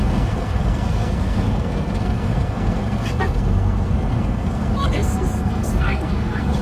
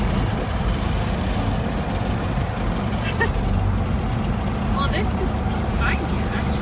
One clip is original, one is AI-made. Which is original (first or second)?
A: second